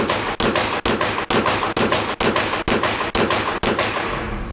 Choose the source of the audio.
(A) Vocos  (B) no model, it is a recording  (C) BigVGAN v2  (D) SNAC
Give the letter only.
B